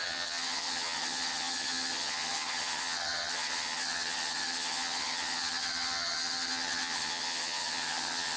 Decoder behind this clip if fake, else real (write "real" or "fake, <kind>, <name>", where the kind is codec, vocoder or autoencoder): fake, vocoder, HiFi-GAN